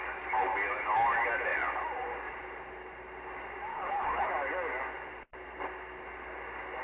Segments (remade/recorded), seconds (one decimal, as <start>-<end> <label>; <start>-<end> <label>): 0.0-3.7 recorded; 3.7-4.3 remade; 4.3-6.8 recorded